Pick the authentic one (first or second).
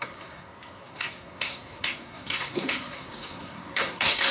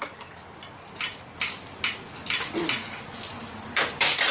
second